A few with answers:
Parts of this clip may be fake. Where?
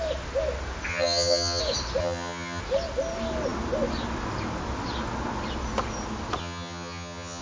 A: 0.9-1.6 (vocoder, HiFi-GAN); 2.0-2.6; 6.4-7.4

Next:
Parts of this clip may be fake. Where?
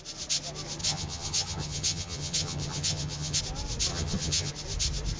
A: 0.8-3.4 (vocoder, HiFi-GAN); 3.9-4.5